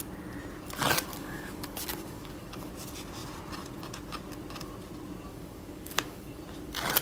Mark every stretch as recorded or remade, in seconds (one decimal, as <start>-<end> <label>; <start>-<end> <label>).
0.0-1.1 recorded; 1.1-2.7 remade; 2.7-5.3 recorded; 5.3-6.4 remade; 6.4-7.0 recorded

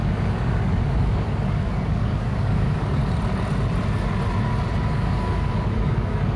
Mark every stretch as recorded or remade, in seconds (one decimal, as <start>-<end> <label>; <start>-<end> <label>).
0.0-3.0 remade; 3.0-4.9 recorded; 4.9-6.4 remade